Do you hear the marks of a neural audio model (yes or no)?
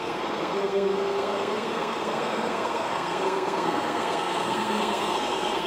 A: yes